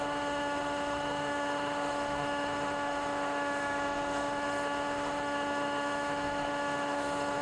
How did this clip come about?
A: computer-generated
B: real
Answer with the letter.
A